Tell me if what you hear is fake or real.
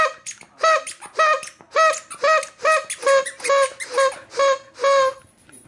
real